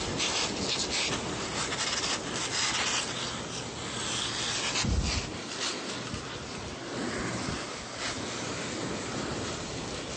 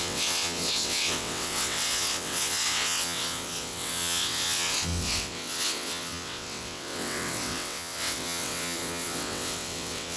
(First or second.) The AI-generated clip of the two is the second